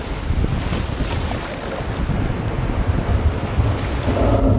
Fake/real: real